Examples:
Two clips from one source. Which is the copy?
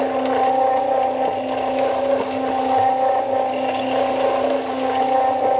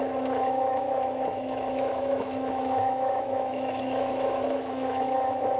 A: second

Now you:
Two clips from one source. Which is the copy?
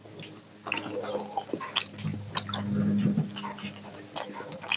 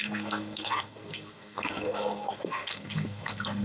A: second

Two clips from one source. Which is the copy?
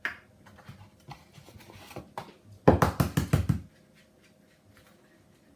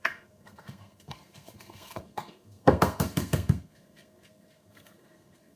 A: second